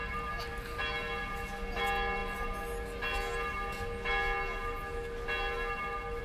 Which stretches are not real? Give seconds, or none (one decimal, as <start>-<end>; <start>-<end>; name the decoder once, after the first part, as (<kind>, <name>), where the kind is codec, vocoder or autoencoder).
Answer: none